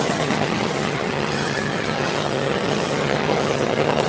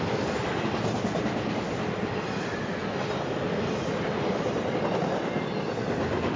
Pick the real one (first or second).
second